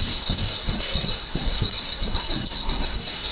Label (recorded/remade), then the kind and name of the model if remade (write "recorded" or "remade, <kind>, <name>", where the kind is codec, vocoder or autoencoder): remade, codec, SNAC